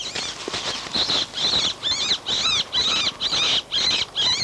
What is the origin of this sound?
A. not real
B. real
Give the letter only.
B